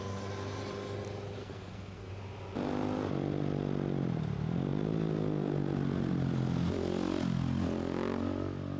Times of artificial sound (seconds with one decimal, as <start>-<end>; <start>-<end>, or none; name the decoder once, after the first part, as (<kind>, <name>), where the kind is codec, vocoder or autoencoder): 1.4-2.1 (codec, SNAC)